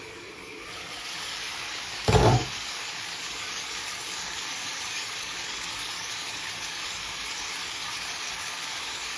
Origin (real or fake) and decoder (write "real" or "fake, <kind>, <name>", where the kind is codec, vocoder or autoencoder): fake, codec, DAC